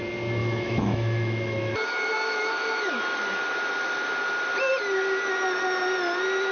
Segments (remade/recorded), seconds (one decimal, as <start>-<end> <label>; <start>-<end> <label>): 0.0-0.4 recorded; 0.4-3.0 remade; 3.0-6.5 recorded